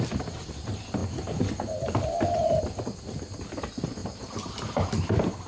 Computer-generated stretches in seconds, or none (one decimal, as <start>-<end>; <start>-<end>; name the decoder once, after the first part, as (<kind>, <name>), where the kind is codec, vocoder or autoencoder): none